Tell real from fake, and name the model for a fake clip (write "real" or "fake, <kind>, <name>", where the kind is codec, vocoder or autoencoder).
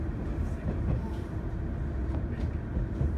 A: fake, vocoder, BigVGAN v2